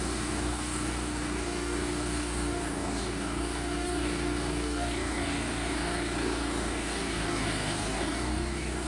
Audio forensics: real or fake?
fake